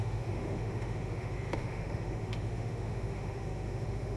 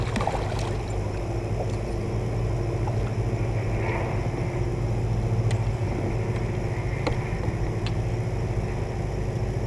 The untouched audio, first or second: second